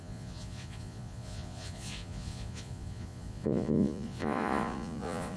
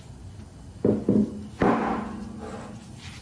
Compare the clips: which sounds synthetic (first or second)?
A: first